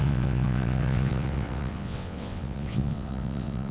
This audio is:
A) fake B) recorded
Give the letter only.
A